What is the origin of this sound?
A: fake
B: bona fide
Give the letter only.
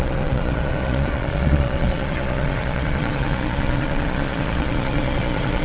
A